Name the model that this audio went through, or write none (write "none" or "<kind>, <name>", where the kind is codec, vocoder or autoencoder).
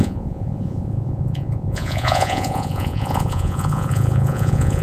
vocoder, Vocos